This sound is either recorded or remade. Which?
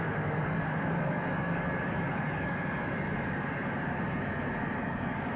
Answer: remade